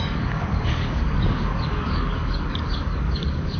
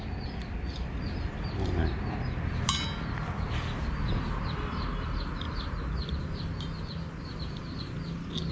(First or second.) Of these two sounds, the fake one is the first